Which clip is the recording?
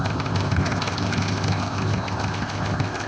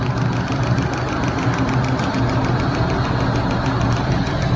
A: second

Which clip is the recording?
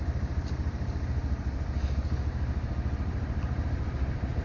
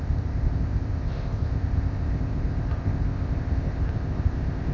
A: first